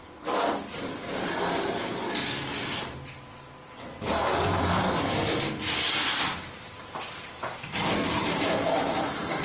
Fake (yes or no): yes